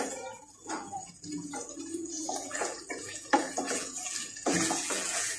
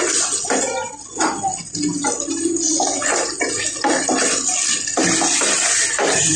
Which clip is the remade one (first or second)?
first